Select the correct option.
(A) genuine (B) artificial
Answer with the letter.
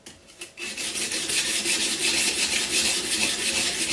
A